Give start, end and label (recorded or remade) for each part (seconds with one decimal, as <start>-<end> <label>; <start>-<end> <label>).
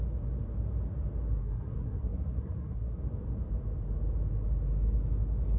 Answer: 0.0-1.4 recorded; 1.4-3.0 remade; 3.0-5.6 recorded